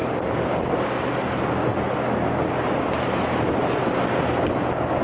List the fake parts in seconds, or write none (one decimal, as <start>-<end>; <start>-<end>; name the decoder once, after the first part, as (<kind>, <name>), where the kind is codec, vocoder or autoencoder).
none